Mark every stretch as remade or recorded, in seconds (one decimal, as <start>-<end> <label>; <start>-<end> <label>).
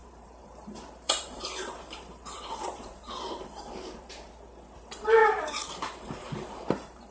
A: 0.0-4.3 remade; 4.3-5.2 recorded; 5.2-7.1 remade